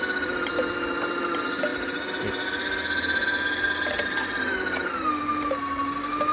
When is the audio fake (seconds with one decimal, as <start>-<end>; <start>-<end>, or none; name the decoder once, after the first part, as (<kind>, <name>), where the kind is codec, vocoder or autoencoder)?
none